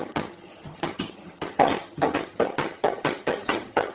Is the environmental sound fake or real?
fake